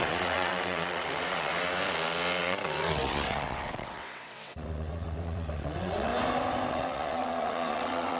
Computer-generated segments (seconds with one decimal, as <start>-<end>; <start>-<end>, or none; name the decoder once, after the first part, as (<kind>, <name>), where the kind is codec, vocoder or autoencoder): 0.0-1.5 (vocoder, WaveNeXt); 2.4-6.1; 6.7-8.2